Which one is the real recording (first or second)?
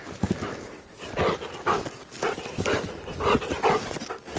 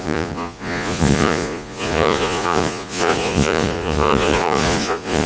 first